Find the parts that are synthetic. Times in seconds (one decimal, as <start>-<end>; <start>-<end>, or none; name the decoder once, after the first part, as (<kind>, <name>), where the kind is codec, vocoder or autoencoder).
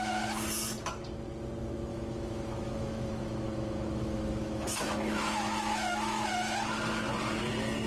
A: 1.9-6.3 (autoencoder, DAC-VAE)